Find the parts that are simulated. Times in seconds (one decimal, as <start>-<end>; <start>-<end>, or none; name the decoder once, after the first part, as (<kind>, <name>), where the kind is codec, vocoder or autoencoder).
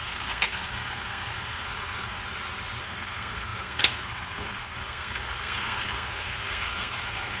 0.0-2.2 (codec, SNAC); 2.8-7.4